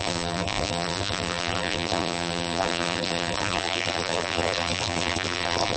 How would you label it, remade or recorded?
remade